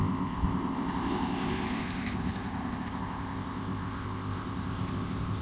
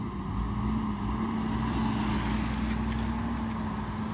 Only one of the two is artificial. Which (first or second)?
first